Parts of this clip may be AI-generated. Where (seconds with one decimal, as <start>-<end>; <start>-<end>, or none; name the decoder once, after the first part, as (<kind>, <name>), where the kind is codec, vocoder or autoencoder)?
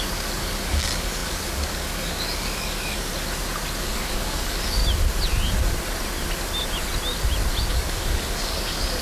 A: 0.0-3.1 (codec, DAC); 3.8-4.8; 7.7-9.0